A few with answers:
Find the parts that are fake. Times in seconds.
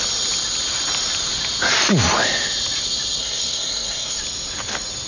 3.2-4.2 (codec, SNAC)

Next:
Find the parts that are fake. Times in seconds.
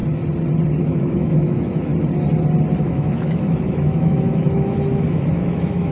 0.8-1.9 (autoencoder, DAC-VAE); 2.8-5.9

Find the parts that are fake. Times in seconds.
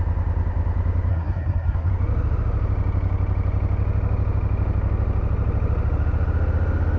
1.1-1.9 (codec, SNAC)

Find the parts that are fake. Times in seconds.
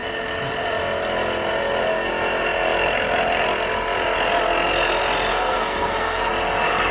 5.3-6.3 (codec, SNAC)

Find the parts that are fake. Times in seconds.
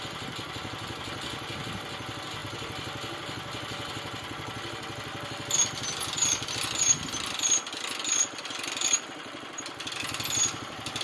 none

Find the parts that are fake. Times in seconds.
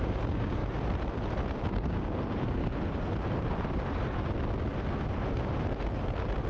0.0-0.6 (codec, DAC); 1.6-2.6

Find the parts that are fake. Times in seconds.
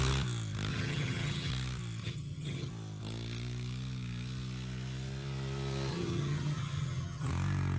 0.7-1.5 (vocoder, HiFi-GAN); 2.0-2.7; 5.9-7.3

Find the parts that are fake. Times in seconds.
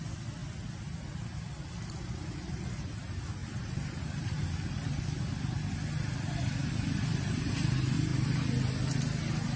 3.4-5.0 (vocoder, BigVGAN v2); 6.6-7.5